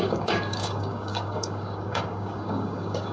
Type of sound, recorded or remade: remade